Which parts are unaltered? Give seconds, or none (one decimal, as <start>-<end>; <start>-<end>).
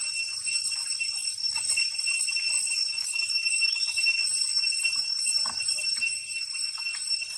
0.0-2.9; 3.8-7.4